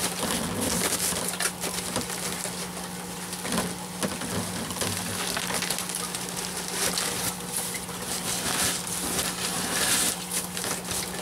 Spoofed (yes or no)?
no